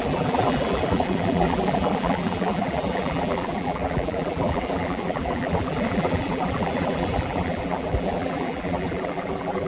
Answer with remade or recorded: remade